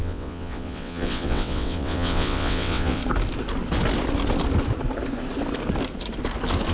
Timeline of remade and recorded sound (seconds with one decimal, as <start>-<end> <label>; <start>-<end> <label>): 0.0-3.0 remade; 3.0-6.7 recorded